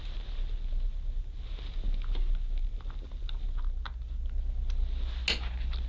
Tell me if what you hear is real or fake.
real